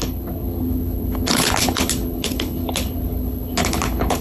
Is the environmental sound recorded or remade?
remade